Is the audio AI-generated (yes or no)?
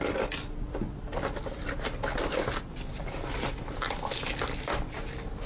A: no